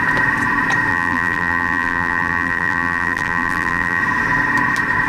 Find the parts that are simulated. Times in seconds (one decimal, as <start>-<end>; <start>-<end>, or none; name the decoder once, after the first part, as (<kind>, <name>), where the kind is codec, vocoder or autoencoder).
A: 0.9-4.0 (vocoder, BigVGAN v2)